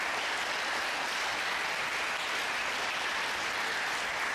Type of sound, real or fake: real